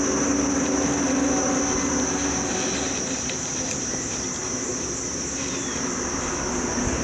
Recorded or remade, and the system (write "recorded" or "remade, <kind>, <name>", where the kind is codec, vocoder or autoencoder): recorded